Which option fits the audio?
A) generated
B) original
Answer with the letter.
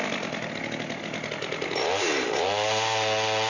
B